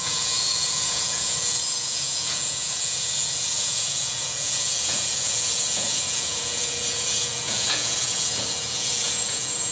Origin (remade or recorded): remade